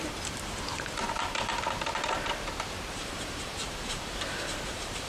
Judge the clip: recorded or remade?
remade